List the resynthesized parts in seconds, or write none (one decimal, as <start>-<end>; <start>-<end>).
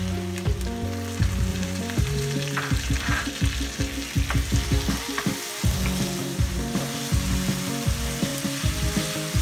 1.5-3.3; 6.2-7.0